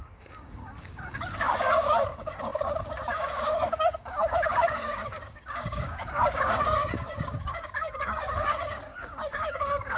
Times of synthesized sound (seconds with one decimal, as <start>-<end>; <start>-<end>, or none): 0.0-10.0